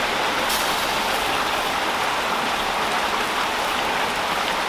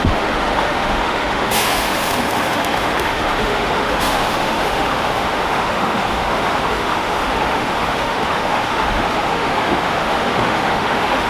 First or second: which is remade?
second